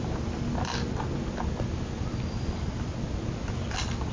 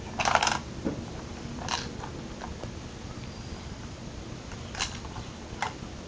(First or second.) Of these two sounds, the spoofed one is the second